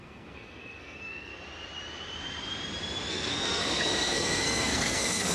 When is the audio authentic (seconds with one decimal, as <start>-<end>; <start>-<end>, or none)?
1.3-3.1